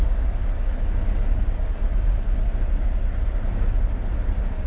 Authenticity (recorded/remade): recorded